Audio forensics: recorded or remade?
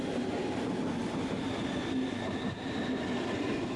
recorded